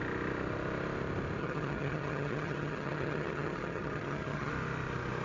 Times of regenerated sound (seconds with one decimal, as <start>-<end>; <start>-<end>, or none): 1.4-4.5